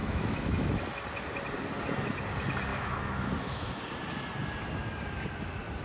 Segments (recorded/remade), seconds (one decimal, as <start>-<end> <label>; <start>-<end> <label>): 0.0-0.7 remade; 0.7-2.7 recorded; 2.7-3.8 remade; 3.8-5.8 recorded